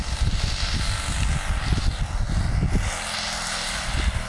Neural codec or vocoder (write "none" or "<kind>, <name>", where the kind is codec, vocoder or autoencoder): none